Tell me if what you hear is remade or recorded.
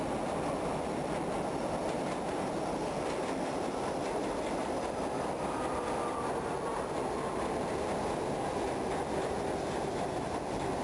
recorded